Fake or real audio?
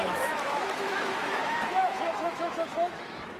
fake